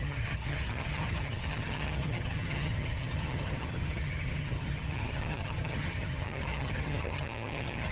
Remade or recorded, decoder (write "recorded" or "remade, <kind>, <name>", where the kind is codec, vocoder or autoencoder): remade, vocoder, HiFi-GAN